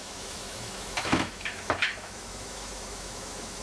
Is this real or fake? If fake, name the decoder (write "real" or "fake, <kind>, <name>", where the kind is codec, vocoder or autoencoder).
fake, autoencoder, DAC-VAE